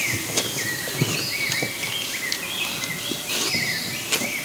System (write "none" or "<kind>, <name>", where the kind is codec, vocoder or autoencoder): none